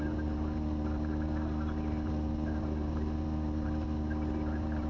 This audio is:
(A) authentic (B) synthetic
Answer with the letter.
A